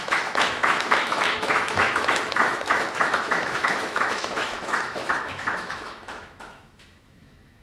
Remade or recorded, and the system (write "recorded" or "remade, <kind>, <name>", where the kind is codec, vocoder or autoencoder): remade, autoencoder, DAC-VAE